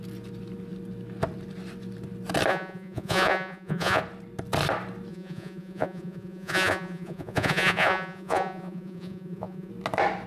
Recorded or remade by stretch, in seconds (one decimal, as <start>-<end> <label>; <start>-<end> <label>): 0.0-2.5 recorded; 2.5-4.0 remade; 4.0-5.1 recorded; 5.1-9.7 remade; 9.7-10.3 recorded